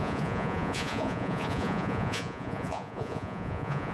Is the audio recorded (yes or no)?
no